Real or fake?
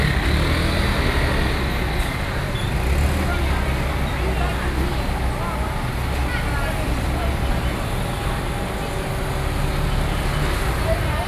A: real